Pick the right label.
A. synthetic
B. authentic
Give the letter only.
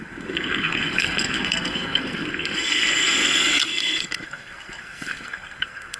A